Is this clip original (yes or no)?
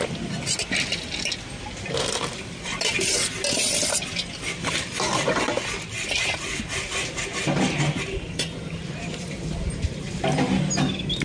yes